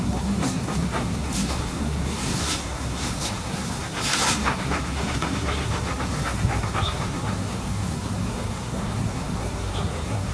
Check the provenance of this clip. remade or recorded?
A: remade